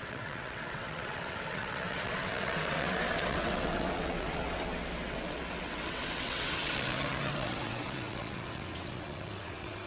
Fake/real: fake